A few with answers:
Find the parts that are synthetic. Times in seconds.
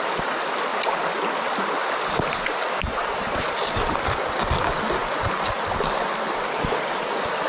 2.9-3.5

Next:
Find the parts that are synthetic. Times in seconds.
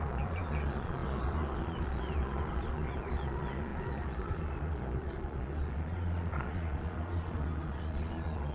0.0-8.5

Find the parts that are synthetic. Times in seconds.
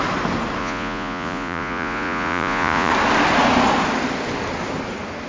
0.6-2.9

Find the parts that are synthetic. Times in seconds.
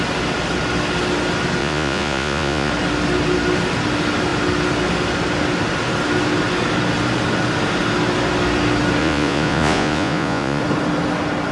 1.6-2.7; 9.0-10.6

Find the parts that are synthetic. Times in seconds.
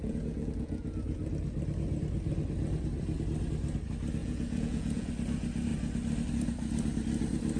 0.0-1.2; 4.2-5.1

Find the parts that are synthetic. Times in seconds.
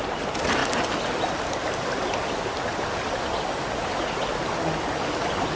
none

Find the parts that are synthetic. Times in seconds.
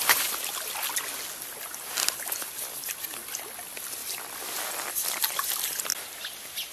none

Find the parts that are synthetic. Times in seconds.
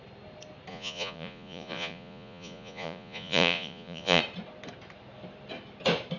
0.7-4.2